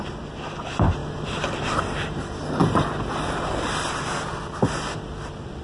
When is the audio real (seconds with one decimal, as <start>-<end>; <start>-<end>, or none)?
0.0-1.0; 2.2-5.6